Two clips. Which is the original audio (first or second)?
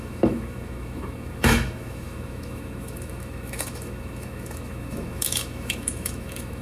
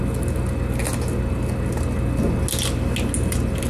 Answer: second